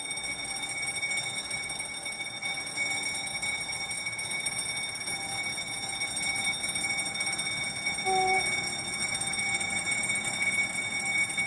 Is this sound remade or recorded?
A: recorded